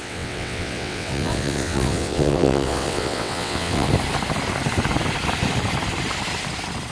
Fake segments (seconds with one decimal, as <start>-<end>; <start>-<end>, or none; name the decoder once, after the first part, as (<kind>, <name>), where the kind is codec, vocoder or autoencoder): 0.0-3.9 (vocoder, WaveNeXt)